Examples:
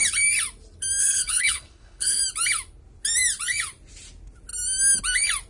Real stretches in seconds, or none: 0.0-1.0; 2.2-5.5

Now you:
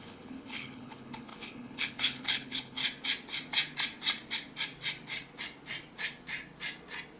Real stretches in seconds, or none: 2.8-7.2

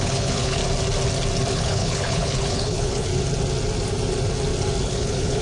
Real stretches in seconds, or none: 0.6-1.5; 3.1-4.8

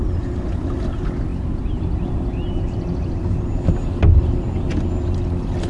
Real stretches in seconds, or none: 0.0-5.7

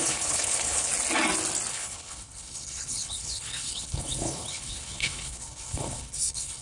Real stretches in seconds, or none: 0.9-1.7

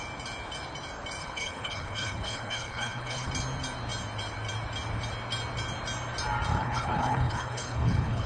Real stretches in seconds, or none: 0.0-1.2; 3.3-6.5

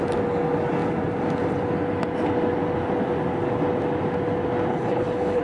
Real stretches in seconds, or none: 0.0-4.7

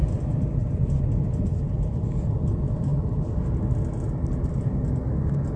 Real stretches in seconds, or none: 0.0-5.6